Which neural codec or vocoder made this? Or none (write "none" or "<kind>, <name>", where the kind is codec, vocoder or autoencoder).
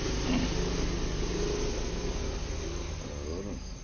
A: none